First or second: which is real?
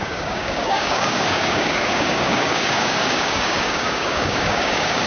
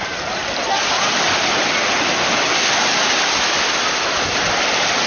second